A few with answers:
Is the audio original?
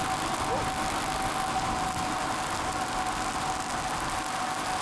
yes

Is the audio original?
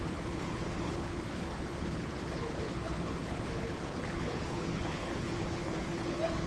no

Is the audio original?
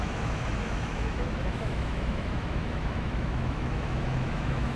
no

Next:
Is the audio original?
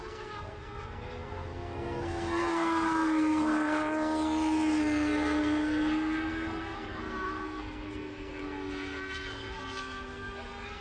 no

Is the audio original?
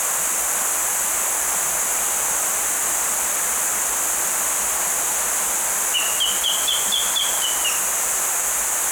yes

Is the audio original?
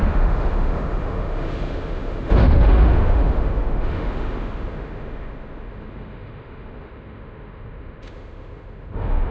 no